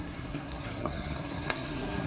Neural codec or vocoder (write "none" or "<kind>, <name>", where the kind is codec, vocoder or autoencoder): codec, SNAC